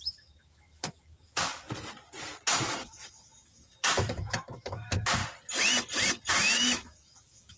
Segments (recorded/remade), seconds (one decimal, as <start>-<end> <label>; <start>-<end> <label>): 0.0-1.5 remade; 1.5-2.8 recorded; 2.8-5.2 remade; 5.2-6.3 recorded; 6.3-7.6 remade